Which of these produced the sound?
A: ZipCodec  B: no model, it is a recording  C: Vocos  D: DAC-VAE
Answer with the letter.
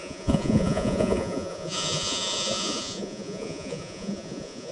C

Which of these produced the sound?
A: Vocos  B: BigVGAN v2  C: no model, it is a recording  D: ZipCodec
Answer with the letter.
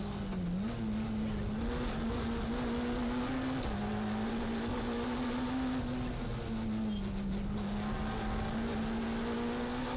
C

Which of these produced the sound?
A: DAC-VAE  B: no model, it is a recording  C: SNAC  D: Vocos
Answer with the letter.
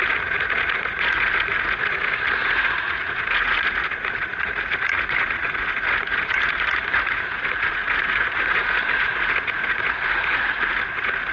D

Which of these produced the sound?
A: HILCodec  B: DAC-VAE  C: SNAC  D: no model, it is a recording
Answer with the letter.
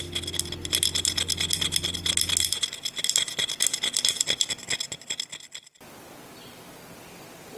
D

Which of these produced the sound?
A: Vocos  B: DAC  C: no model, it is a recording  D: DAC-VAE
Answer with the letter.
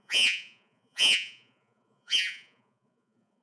A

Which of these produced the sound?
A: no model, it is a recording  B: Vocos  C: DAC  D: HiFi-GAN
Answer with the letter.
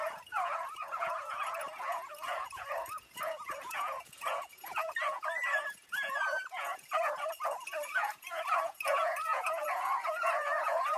B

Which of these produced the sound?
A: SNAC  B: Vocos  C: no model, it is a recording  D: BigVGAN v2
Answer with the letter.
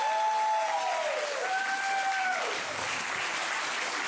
C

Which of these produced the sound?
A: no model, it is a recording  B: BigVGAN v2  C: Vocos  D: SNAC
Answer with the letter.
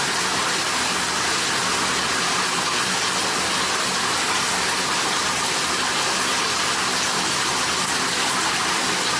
A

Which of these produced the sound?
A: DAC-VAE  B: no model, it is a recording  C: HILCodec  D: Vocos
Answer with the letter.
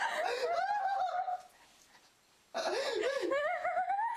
B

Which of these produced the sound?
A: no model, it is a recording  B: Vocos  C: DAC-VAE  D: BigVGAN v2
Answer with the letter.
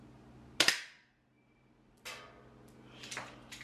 A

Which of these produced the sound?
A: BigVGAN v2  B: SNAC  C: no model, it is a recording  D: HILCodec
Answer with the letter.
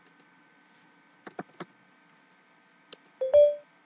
C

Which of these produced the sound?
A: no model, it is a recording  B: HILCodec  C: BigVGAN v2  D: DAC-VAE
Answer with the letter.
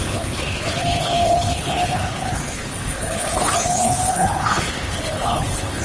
B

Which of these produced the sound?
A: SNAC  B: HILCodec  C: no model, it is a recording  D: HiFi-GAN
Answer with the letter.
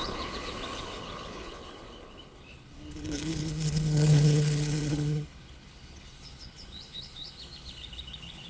B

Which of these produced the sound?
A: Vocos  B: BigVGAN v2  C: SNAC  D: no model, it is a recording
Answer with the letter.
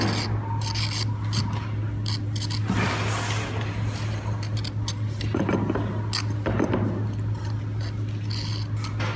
D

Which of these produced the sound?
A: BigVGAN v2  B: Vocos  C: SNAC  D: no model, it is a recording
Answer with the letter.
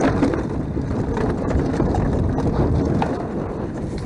D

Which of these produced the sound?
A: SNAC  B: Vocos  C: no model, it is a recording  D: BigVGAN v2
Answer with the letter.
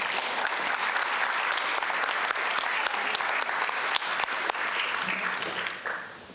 C